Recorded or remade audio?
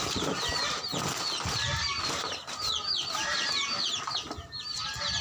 recorded